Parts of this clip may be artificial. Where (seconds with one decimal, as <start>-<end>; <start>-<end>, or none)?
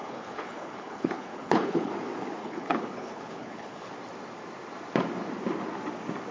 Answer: 0.0-1.9; 2.4-3.9